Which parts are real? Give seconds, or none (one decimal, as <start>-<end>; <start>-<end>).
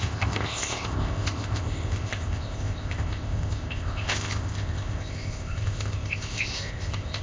none